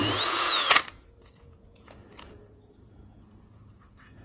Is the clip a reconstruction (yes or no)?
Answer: yes